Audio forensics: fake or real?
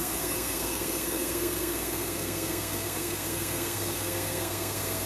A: fake